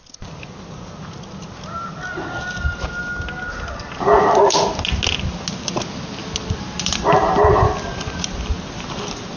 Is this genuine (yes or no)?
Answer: yes